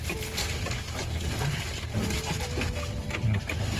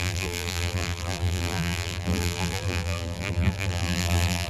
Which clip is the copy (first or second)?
second